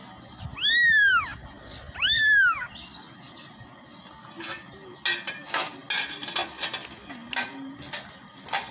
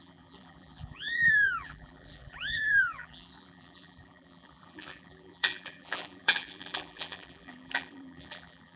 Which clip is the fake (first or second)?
second